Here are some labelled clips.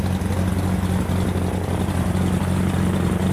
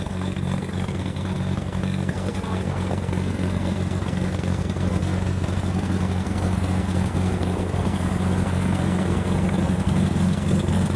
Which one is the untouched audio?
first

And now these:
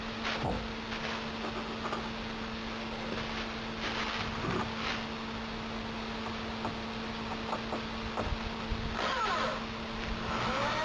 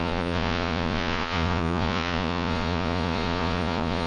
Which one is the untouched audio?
first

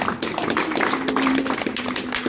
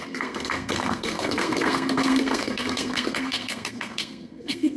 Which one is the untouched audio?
first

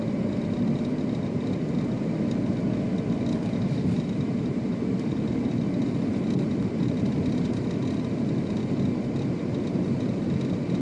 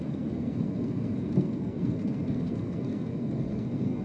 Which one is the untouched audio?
first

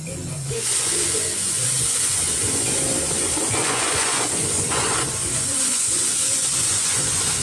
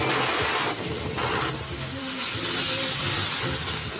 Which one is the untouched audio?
second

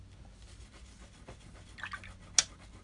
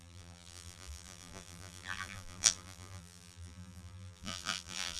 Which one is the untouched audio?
first